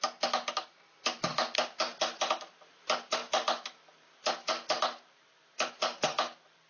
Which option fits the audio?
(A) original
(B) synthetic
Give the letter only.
A